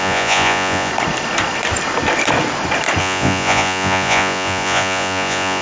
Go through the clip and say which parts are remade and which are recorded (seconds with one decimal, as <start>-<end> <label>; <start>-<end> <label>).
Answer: 0.0-0.9 remade; 0.9-3.0 recorded; 3.0-5.6 remade